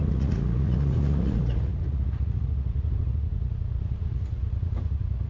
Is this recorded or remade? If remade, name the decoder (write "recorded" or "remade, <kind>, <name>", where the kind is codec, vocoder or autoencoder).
remade, vocoder, Vocos